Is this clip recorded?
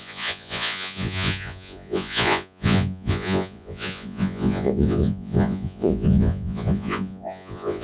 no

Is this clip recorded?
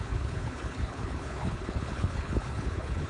no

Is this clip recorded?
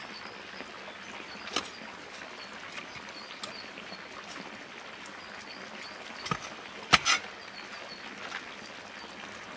yes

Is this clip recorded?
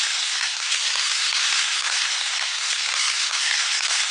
no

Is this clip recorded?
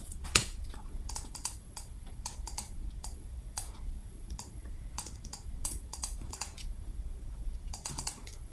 no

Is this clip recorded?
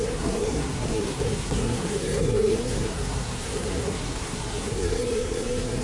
no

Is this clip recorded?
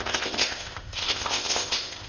no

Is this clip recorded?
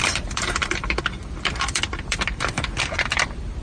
no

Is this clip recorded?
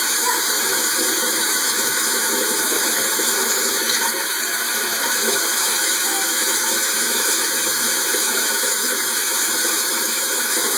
no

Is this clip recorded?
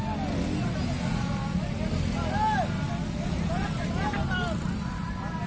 yes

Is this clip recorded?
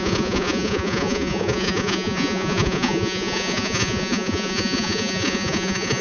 no